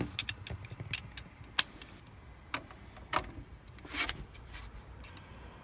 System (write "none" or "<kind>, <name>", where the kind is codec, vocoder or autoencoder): none